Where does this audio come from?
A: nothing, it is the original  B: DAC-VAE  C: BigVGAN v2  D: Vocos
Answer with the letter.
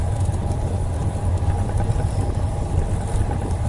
A